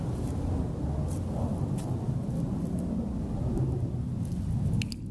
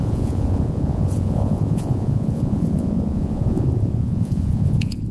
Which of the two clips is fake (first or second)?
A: second